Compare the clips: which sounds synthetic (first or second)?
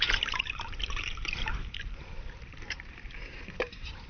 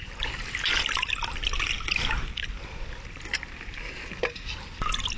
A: first